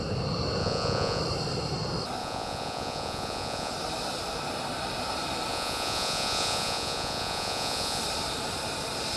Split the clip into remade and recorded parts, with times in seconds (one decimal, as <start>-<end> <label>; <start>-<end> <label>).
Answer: 0.0-0.6 recorded; 0.6-1.2 remade; 1.2-2.2 recorded; 2.2-3.7 remade; 3.7-5.5 recorded; 5.5-8.0 remade; 8.0-9.2 recorded